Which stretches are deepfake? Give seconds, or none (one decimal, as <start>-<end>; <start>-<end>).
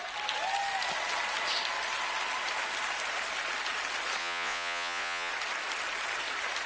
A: 4.2-5.3